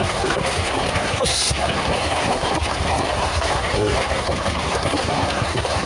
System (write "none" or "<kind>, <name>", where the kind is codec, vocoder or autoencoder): codec, SNAC